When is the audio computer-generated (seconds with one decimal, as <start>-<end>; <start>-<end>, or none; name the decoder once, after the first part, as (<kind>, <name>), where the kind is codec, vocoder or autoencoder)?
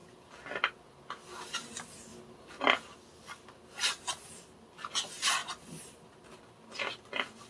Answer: none